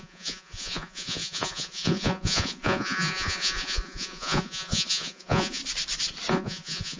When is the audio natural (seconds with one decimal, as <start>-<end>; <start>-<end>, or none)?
5.6-6.3